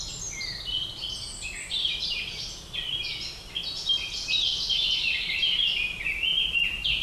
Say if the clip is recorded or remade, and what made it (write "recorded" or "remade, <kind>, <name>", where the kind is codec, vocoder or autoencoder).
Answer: remade, vocoder, BigVGAN v2